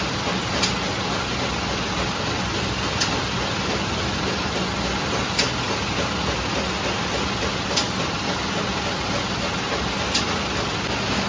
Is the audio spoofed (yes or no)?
no